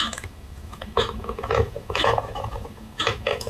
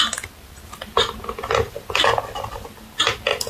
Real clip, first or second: second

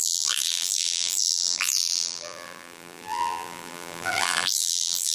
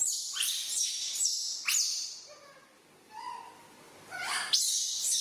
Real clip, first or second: second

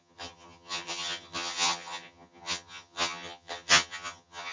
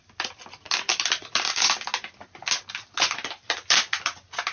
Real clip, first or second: second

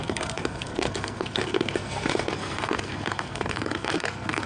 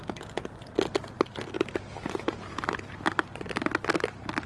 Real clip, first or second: second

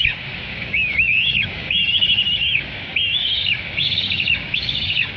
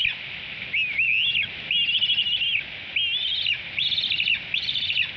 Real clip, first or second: second